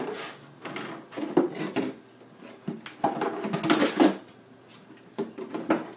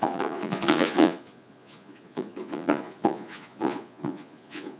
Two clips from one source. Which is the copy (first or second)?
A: second